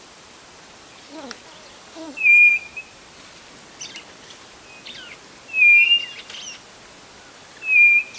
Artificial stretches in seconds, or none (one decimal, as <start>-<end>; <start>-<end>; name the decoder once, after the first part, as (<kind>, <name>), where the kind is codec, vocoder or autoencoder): 1.7-2.7 (codec, DAC)